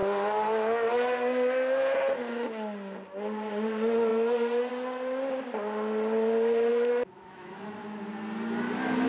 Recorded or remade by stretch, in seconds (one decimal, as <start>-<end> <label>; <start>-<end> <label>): 0.0-6.7 recorded; 6.7-7.7 remade; 7.7-9.1 recorded